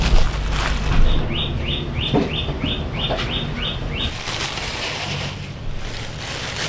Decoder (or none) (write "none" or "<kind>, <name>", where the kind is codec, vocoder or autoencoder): none